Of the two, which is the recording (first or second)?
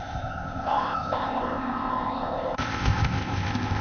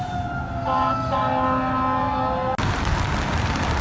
second